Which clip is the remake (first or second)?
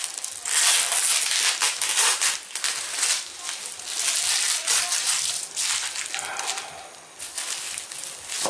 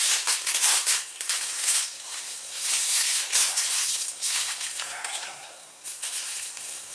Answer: second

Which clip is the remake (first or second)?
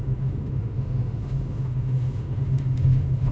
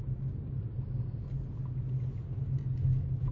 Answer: first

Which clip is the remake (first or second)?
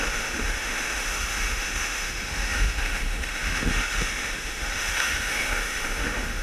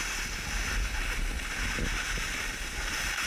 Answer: first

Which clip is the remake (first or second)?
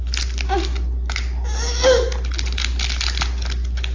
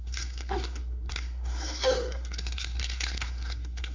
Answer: second